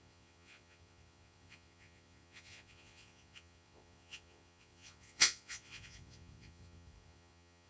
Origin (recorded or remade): remade